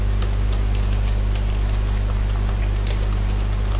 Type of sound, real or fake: real